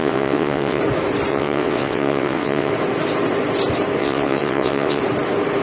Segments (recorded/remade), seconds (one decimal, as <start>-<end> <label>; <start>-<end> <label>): 0.0-0.8 remade; 0.8-1.3 recorded; 1.3-2.7 remade; 2.7-4.0 recorded; 4.0-5.0 remade; 5.0-5.6 recorded